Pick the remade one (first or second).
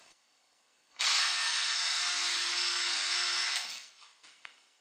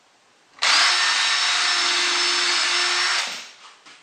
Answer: first